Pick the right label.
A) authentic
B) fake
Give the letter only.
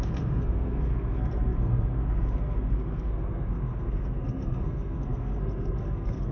B